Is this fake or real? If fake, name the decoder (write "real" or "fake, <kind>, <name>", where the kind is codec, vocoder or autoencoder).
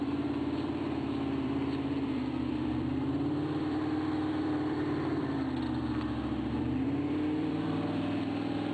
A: fake, vocoder, BigVGAN v2